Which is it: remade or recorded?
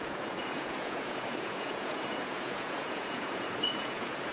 remade